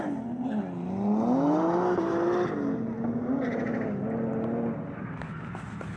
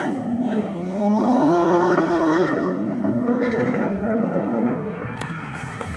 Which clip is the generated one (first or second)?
second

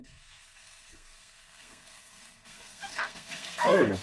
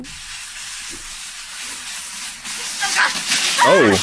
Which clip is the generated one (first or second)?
first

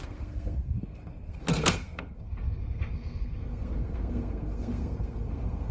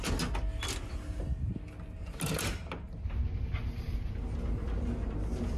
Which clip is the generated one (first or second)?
first